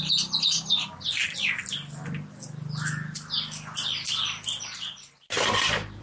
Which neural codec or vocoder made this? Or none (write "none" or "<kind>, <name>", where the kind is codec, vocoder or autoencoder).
none